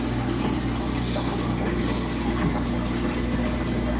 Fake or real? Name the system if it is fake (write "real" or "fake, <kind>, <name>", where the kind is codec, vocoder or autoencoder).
real